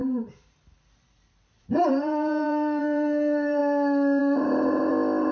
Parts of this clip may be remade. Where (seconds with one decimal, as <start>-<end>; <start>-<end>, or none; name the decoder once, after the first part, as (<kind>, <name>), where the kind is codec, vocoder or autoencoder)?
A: 0.0-3.6 (vocoder, BigVGAN v2); 4.2-5.3